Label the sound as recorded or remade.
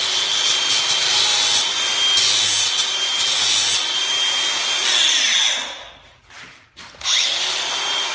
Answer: recorded